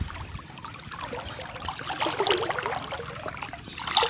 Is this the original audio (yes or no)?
yes